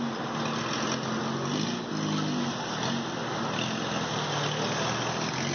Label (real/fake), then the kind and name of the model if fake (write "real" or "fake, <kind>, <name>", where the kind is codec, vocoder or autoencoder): real